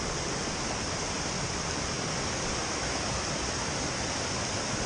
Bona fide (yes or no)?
yes